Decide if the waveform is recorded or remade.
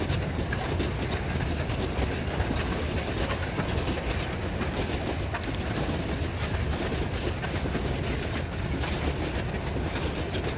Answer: recorded